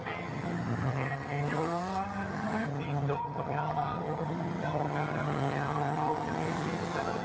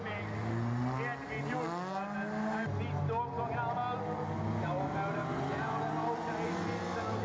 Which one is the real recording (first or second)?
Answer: second